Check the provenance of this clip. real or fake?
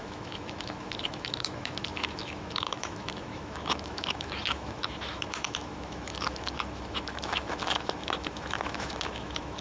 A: fake